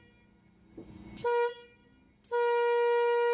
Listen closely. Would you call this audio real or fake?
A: real